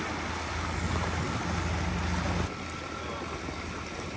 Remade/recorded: recorded